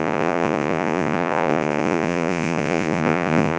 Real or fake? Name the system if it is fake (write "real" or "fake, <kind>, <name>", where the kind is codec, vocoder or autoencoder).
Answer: fake, vocoder, Vocos